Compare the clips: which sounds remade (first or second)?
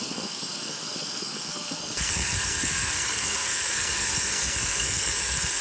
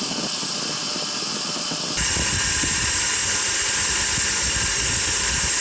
first